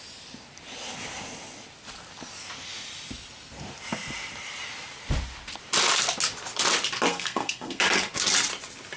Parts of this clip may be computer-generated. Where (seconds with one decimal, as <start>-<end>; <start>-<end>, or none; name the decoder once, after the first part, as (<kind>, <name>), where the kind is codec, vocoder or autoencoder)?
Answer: 7.1-7.8 (codec, SNAC)